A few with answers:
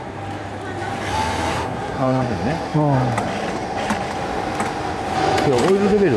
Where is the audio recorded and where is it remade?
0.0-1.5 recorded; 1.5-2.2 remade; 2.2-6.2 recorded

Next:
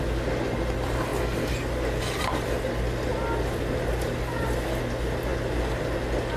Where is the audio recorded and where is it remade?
0.0-6.4 recorded

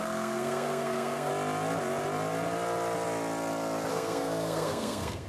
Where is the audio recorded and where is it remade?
0.0-1.3 remade; 1.3-3.9 recorded; 3.9-5.3 remade

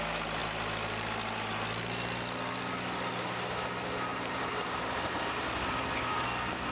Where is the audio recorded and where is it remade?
0.0-4.1 recorded; 4.1-5.3 remade; 5.3-6.7 recorded

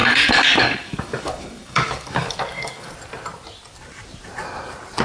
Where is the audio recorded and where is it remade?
0.0-2.9 remade; 2.9-5.0 recorded

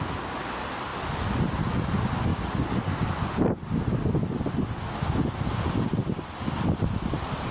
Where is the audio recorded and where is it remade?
0.0-7.5 recorded

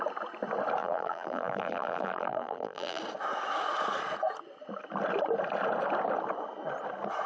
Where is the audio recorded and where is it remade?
0.0-0.8 recorded; 0.8-3.0 remade; 3.0-7.3 recorded

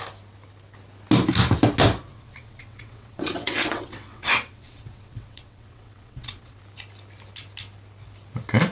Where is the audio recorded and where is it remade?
0.0-2.1 recorded; 2.1-6.6 remade; 6.6-8.7 recorded